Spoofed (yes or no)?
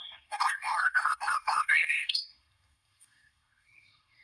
yes